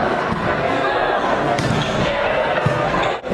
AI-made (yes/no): yes